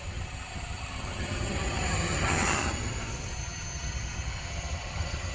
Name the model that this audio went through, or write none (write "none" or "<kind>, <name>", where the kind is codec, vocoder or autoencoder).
vocoder, HiFi-GAN